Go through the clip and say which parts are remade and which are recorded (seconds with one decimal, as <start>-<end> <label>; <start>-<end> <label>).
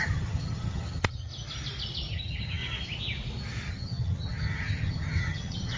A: 0.0-1.3 remade; 1.3-2.1 recorded; 2.1-2.6 remade; 2.6-3.7 recorded; 3.7-5.8 remade